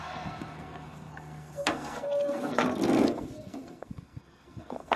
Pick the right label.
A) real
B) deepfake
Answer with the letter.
B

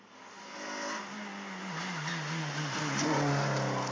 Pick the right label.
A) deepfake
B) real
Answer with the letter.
B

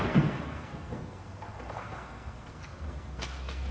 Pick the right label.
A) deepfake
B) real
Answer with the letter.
A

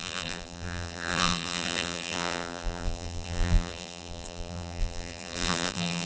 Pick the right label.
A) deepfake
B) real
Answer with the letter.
A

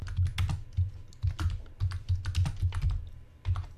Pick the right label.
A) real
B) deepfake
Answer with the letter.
A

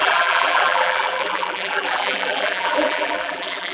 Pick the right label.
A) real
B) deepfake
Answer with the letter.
B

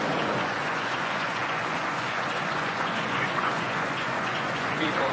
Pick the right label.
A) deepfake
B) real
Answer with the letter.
A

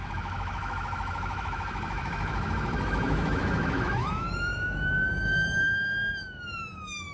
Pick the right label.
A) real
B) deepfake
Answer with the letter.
B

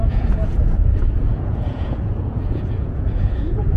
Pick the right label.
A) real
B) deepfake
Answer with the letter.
B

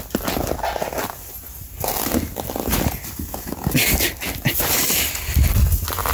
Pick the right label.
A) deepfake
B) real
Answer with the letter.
B